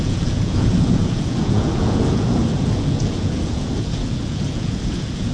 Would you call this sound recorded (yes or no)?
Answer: no